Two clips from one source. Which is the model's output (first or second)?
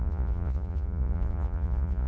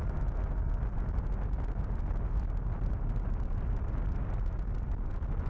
first